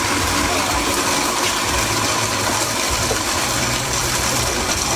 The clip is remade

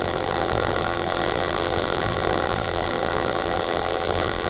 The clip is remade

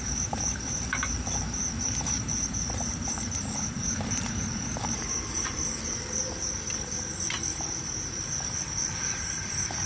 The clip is remade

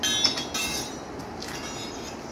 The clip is recorded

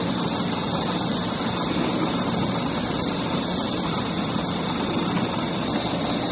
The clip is recorded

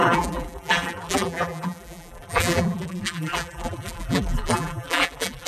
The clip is remade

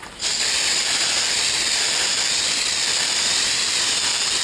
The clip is remade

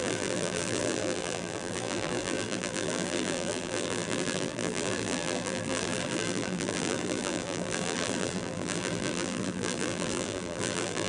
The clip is remade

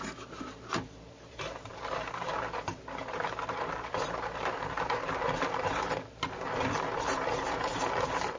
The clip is remade